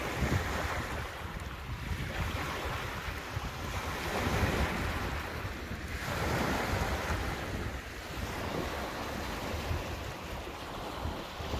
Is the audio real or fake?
real